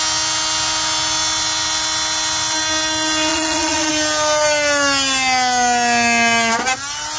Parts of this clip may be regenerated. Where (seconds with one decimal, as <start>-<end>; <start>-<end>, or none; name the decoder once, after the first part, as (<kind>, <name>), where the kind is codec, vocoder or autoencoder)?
3.3-3.9 (vocoder, Vocos)